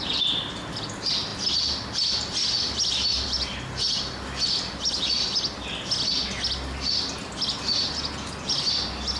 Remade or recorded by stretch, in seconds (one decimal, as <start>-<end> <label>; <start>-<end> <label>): 0.0-9.2 recorded